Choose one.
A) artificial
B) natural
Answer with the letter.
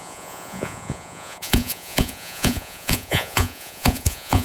A